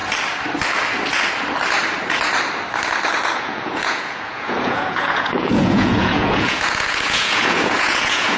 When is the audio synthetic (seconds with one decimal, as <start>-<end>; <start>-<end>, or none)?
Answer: 3.4-8.4